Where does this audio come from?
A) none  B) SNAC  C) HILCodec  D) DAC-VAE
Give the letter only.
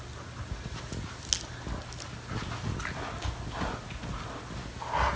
A